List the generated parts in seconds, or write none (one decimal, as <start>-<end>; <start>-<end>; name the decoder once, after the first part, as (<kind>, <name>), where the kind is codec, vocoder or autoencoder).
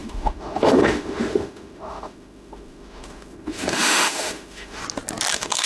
0.0-4.8 (autoencoder, DAC-VAE); 5.3-5.7